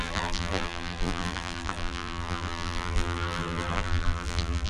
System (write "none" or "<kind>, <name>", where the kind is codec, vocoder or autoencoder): vocoder, BigVGAN v2